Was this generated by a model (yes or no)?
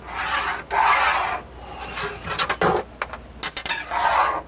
no